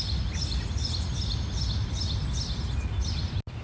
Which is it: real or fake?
real